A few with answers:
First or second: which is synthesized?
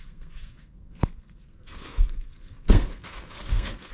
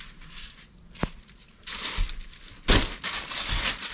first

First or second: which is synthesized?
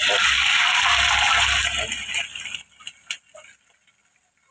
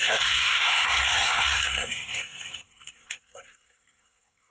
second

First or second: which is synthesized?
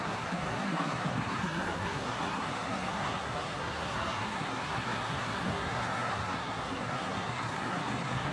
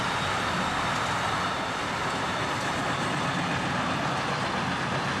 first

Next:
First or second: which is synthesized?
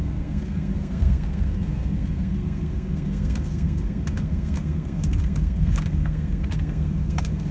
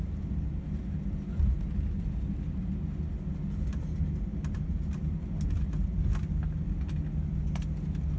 first